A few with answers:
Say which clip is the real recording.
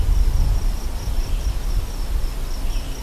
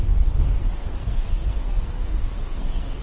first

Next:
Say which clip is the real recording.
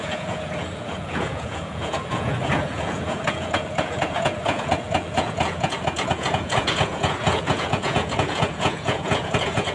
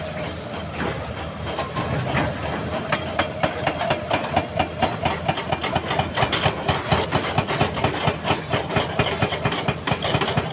second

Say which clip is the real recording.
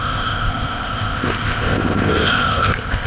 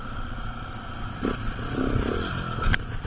second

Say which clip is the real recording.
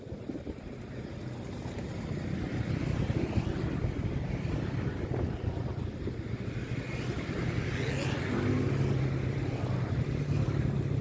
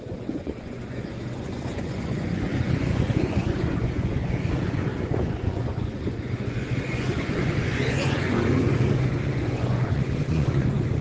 first